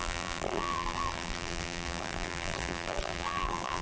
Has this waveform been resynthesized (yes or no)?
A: yes